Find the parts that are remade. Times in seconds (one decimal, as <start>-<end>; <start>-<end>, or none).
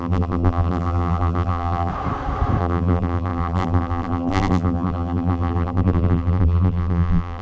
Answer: 0.0-1.9; 2.6-7.4